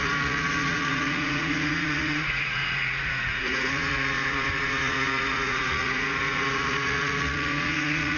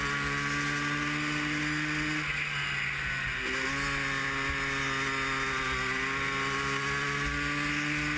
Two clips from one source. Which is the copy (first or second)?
first